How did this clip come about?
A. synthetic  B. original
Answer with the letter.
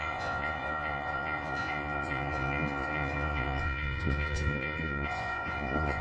A